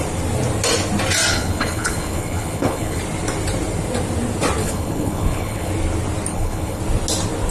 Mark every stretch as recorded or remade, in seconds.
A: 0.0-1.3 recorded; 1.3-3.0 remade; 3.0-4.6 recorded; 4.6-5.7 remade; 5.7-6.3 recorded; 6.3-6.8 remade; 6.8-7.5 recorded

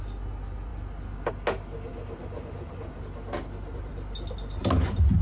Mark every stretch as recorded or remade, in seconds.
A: 0.0-5.2 recorded